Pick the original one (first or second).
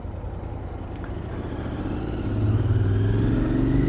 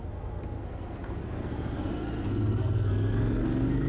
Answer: first